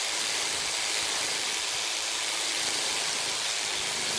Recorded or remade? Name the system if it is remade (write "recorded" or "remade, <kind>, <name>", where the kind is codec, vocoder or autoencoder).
remade, vocoder, BigVGAN v2